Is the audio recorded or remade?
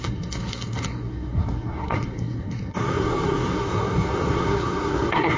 remade